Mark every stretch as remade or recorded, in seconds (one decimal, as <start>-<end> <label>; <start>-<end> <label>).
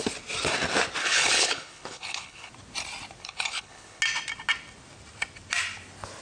0.0-1.0 recorded; 1.0-2.5 remade; 2.5-3.2 recorded; 3.2-4.0 remade; 4.0-6.2 recorded